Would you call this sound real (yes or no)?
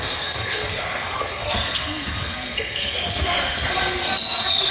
no